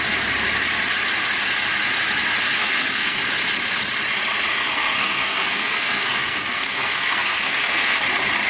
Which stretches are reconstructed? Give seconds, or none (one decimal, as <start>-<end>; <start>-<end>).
2.6-3.2; 4.5-8.0